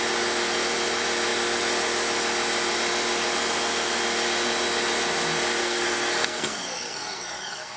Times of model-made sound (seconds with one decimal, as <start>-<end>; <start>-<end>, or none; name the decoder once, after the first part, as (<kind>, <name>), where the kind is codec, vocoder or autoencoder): 5.6-7.8 (codec, SNAC)